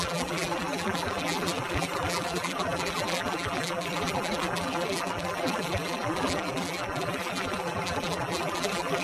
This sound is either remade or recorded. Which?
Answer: remade